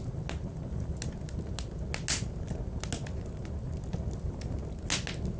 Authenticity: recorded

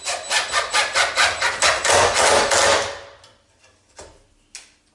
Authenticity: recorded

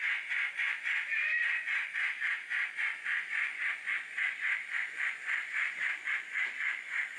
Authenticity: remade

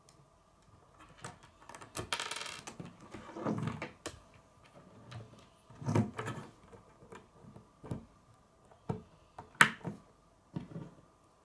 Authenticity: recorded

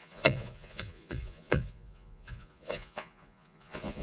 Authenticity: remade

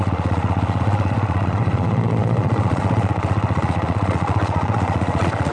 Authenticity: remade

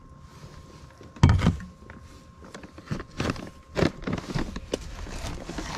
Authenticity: recorded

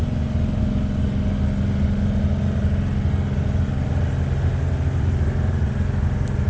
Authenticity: recorded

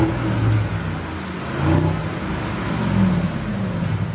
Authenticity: recorded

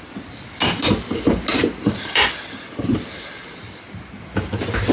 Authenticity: recorded